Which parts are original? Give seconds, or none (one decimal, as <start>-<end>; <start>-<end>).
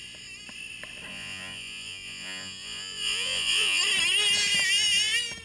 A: 0.0-1.1; 3.8-5.4